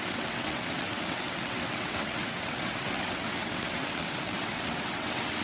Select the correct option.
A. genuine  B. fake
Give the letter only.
B